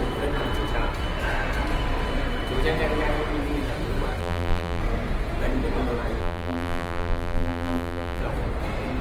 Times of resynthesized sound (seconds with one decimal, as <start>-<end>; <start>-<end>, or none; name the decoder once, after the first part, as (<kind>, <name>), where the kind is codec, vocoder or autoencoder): 4.2-4.8 (vocoder, BigVGAN v2); 6.2-8.2